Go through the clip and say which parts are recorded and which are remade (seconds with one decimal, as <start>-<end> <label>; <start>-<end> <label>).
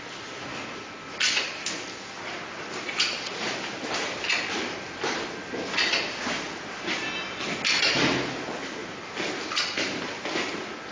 0.0-10.9 recorded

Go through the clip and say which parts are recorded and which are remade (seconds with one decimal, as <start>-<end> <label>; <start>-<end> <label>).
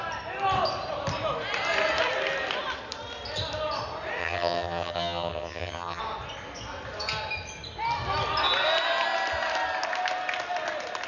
0.0-4.2 recorded; 4.2-6.0 remade; 6.0-11.1 recorded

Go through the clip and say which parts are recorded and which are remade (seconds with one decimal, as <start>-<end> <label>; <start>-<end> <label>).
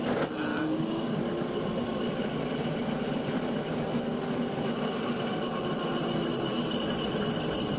0.0-0.5 recorded; 0.5-1.2 remade; 1.2-7.8 recorded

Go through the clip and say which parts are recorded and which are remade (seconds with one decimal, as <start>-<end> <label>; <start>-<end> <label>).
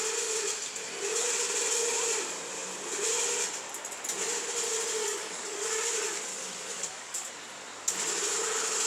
0.0-5.0 recorded; 5.0-5.7 remade; 5.7-6.3 recorded; 6.3-7.3 remade; 7.3-8.9 recorded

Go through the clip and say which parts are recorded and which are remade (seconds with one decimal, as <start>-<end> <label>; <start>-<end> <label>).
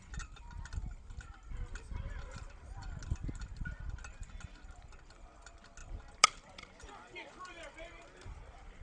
0.0-8.8 recorded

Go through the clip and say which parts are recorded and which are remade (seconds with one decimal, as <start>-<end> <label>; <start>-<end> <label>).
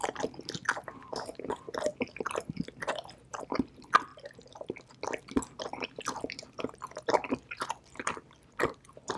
0.0-4.1 remade; 4.1-6.3 recorded; 6.3-9.2 remade